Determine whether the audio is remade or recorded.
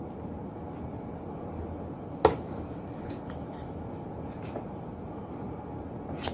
recorded